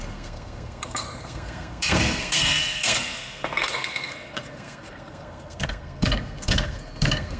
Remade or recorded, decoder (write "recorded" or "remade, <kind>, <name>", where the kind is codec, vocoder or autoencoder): remade, codec, SNAC